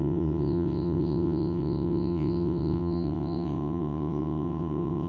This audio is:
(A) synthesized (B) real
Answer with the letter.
A